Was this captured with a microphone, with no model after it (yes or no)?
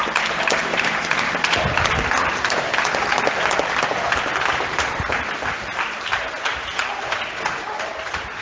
yes